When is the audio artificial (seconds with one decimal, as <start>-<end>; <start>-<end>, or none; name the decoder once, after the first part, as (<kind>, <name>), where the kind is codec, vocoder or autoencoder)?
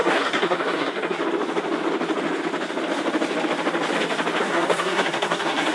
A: 0.0-1.2 (codec, SNAC); 4.4-5.7